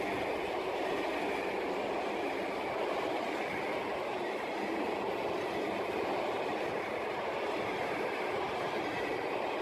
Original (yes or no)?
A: yes